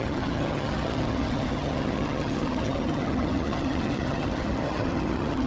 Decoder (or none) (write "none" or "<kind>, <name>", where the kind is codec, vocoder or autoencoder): vocoder, HiFi-GAN